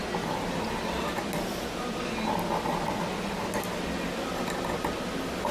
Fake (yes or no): no